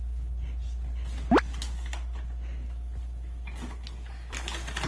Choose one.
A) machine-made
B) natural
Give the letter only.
B